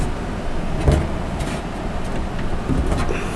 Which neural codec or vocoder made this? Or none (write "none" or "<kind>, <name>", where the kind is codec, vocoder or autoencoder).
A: none